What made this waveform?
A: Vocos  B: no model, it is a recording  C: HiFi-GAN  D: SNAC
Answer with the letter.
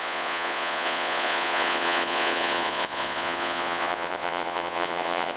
A